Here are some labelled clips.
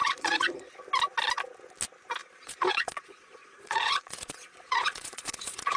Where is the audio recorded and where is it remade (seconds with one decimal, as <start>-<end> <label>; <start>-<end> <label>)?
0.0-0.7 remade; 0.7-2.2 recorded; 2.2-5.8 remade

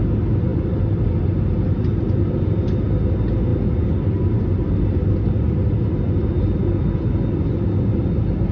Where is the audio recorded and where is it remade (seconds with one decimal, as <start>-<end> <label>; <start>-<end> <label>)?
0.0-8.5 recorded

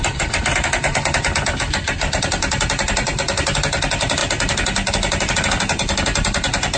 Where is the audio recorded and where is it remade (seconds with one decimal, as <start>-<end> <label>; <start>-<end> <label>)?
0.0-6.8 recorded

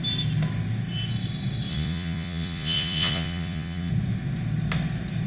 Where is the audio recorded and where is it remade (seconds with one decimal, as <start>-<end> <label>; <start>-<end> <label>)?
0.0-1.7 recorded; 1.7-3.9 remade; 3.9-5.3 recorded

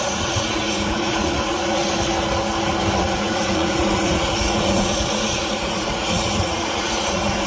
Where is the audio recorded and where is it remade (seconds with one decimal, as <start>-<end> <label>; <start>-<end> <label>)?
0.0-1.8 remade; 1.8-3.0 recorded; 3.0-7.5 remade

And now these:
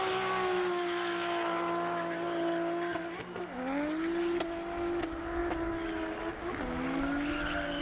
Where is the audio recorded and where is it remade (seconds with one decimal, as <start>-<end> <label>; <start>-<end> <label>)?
0.0-7.8 recorded

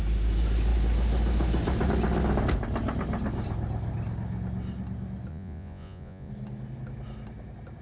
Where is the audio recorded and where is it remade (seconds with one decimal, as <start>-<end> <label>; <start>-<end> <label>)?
0.0-5.3 recorded; 5.3-6.3 remade; 6.3-7.8 recorded